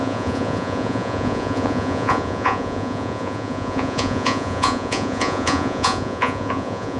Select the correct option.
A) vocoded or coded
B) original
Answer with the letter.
A